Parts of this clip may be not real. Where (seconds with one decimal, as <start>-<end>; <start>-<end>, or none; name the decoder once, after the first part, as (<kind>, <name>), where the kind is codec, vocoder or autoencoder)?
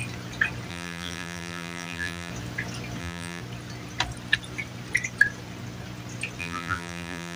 0.7-2.3 (vocoder, BigVGAN v2); 3.0-3.4; 6.4-7.4